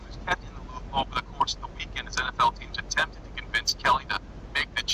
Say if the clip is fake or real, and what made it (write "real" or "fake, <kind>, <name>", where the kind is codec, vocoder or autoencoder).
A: real